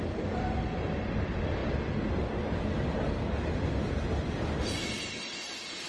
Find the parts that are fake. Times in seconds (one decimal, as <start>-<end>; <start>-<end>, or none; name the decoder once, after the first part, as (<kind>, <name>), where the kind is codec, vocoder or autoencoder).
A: none